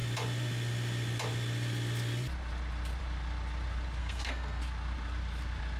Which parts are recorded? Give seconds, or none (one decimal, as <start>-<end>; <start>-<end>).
0.0-4.0; 4.6-5.8